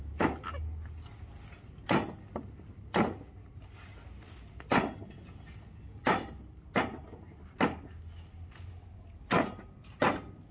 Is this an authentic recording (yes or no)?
yes